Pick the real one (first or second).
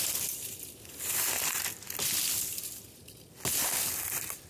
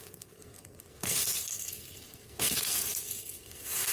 first